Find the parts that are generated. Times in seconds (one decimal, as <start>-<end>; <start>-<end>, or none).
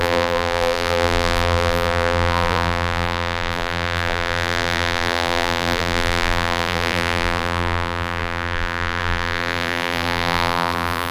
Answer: 0.0-11.1